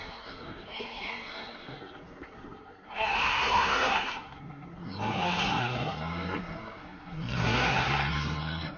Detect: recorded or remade remade